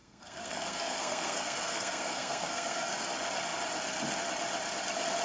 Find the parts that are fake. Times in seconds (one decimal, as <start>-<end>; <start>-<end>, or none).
0.0-3.1